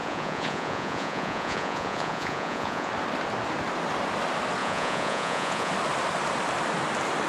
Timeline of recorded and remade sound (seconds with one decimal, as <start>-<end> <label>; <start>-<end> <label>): 0.0-2.9 remade; 2.9-4.6 recorded; 4.6-5.7 remade; 5.7-7.3 recorded